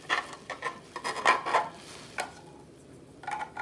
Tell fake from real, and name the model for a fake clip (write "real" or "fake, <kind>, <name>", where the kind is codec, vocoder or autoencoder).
real